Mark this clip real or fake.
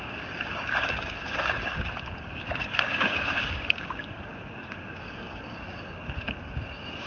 fake